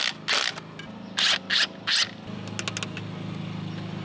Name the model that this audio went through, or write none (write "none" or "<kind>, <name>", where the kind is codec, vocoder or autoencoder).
none